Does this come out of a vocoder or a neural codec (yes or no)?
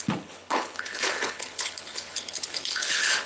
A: yes